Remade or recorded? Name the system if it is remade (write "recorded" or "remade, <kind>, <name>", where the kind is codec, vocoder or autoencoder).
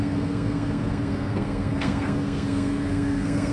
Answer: remade, codec, SNAC